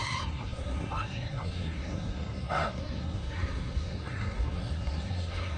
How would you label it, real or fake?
fake